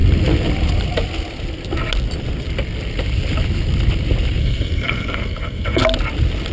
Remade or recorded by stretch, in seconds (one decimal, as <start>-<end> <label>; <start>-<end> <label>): 0.0-4.4 recorded; 4.4-5.8 remade; 5.8-6.5 recorded